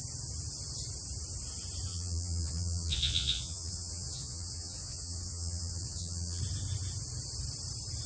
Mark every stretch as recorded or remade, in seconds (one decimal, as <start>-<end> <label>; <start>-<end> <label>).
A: 0.0-1.9 recorded; 1.9-6.4 remade; 6.4-8.1 recorded